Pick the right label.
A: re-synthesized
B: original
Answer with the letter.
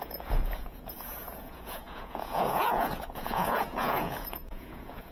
A